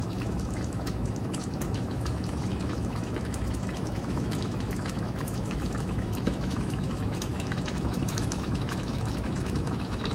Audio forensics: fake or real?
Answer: fake